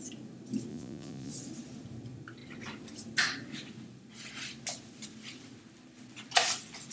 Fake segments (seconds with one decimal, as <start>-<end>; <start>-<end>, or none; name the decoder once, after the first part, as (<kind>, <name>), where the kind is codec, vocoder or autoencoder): 0.7-1.3 (vocoder, Vocos)